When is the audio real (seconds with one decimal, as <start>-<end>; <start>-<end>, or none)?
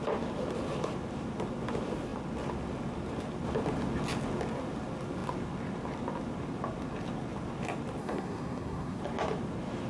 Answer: 0.0-8.0; 9.0-9.9